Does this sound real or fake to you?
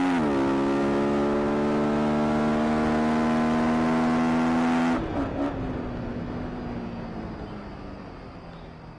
real